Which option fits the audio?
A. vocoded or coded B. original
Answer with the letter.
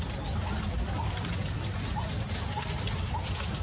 B